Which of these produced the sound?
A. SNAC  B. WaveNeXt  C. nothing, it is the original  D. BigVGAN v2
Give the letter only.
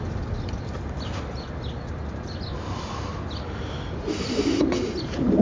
C